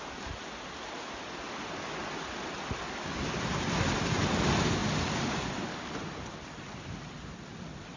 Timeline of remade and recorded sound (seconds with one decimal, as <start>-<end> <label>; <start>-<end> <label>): 0.0-8.0 recorded